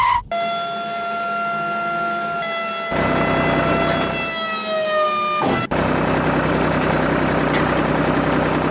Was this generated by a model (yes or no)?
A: no